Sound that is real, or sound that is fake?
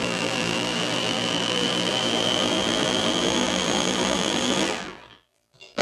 fake